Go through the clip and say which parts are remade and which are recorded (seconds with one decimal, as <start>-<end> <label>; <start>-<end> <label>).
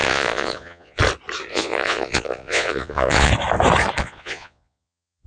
0.0-1.0 remade; 1.0-1.5 recorded; 1.5-3.3 remade; 3.3-4.0 recorded; 4.0-5.3 remade